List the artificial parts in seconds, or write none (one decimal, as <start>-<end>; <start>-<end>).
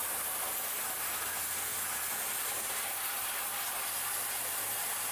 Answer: none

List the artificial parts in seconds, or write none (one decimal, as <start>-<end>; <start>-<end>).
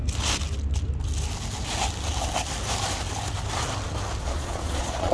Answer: 4.2-5.1